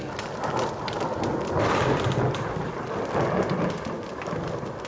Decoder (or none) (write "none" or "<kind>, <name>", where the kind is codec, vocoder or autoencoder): none